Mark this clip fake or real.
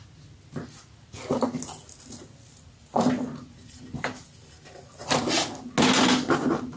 real